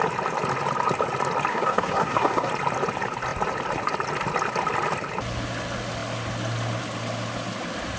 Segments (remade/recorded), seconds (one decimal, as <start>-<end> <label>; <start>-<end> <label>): 0.0-1.5 recorded; 1.5-2.5 remade; 2.5-8.0 recorded

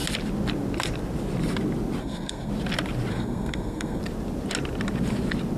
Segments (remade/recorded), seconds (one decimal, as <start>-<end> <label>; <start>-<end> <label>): 0.0-2.0 recorded; 2.0-2.5 remade; 2.5-3.1 recorded; 3.1-4.0 remade; 4.0-5.6 recorded

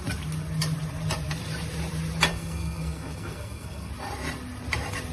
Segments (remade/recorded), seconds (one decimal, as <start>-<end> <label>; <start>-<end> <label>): 0.0-2.3 recorded; 2.3-3.9 remade; 3.9-5.1 recorded

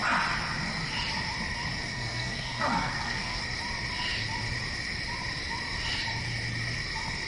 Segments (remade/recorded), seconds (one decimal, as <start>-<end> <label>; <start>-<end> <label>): 0.0-1.9 recorded; 1.9-3.4 remade; 3.4-7.3 recorded

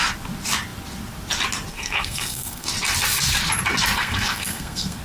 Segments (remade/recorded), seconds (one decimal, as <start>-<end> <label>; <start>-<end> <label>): 0.0-1.7 recorded; 1.7-2.7 remade; 2.7-4.0 recorded; 4.0-5.0 remade

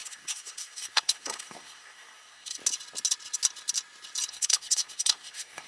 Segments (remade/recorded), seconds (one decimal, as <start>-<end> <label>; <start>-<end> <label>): 0.0-2.6 remade; 2.6-4.3 recorded; 4.3-5.7 remade

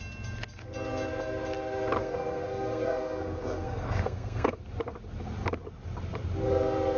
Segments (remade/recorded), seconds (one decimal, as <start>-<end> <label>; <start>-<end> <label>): 0.0-2.0 recorded; 2.0-4.6 remade; 4.6-7.0 recorded